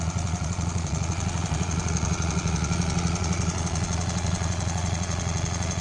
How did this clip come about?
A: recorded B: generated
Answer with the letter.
B